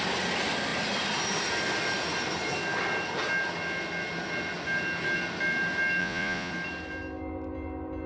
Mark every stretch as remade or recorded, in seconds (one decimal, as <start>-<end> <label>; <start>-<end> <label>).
0.0-6.0 recorded; 6.0-6.5 remade; 6.5-8.1 recorded